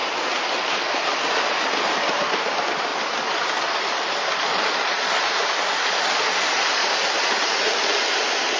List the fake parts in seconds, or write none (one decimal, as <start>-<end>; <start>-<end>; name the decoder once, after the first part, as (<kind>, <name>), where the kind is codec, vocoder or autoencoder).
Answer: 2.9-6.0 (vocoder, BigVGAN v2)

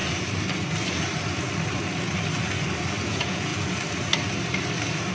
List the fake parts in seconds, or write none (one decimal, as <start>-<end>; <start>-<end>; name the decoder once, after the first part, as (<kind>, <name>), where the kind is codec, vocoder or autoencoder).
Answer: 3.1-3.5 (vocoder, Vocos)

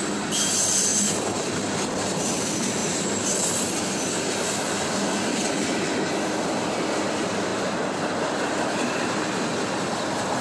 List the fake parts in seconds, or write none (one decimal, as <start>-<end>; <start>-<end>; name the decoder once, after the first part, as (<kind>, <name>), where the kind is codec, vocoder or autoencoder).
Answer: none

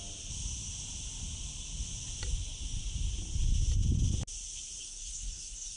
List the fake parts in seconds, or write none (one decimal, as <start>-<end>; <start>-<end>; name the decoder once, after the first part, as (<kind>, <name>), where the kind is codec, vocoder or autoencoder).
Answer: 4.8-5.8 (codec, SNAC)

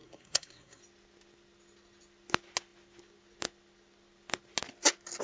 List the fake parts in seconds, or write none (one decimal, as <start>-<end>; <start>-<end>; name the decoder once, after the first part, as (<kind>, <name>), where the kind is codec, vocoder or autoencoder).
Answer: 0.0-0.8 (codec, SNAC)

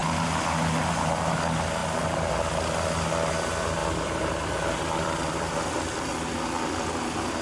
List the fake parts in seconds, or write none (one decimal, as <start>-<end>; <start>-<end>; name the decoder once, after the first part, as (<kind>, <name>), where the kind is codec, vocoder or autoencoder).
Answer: 3.8-6.0 (vocoder, BigVGAN v2)

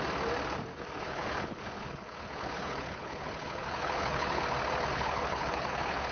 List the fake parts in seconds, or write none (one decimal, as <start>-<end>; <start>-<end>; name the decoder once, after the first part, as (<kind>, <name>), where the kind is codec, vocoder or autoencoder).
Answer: 0.7-4.4 (codec, HILCodec); 4.9-6.1

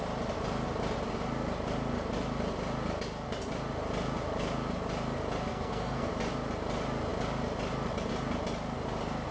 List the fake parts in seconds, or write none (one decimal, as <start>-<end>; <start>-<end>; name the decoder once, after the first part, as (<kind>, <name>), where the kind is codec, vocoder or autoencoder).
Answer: 5.5-6.1 (codec, SNAC)